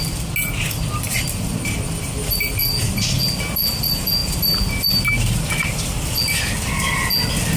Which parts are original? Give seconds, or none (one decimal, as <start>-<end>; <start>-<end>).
0.0-7.6